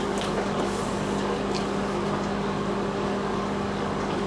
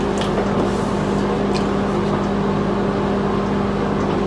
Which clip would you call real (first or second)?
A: second